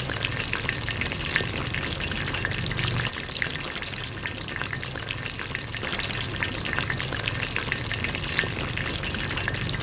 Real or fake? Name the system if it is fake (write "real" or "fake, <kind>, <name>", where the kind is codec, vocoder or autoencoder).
real